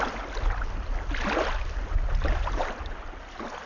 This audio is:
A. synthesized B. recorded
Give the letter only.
B